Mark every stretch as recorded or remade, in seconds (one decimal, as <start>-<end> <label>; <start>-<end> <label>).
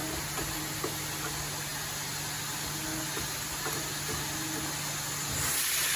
0.0-0.6 remade; 0.6-6.0 recorded